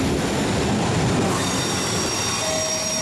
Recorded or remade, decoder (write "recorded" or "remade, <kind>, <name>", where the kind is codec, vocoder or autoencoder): recorded